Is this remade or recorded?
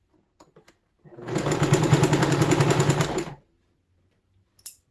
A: recorded